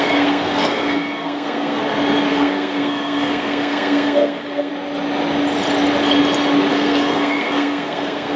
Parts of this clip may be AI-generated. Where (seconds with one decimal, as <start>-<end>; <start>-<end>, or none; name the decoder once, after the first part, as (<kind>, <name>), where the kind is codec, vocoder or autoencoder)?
0.0-1.8 (codec, SNAC); 2.3-4.7; 6.7-8.4